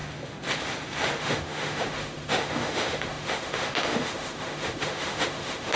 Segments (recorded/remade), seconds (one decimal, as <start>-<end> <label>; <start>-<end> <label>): 0.0-1.2 recorded; 1.2-5.8 remade